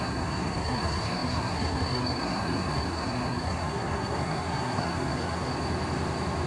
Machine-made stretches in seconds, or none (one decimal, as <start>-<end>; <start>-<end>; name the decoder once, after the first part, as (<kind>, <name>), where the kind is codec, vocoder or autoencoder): 0.0-5.5 (codec, SNAC)